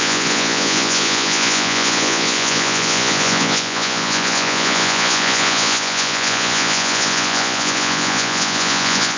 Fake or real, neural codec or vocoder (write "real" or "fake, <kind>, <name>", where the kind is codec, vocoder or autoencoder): fake, vocoder, Vocos